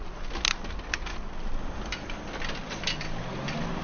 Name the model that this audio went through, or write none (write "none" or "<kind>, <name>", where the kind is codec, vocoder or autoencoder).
none